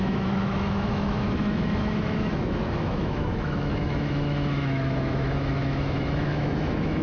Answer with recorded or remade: remade